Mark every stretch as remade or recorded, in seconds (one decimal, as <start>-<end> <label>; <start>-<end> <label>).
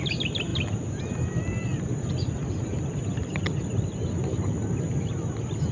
0.0-5.7 recorded